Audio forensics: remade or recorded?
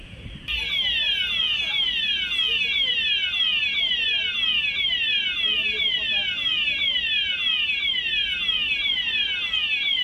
recorded